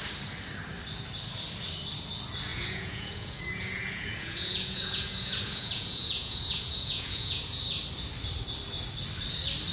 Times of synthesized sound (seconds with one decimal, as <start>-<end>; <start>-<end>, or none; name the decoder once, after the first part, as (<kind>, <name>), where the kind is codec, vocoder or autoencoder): 2.5-7.6 (vocoder, Vocos)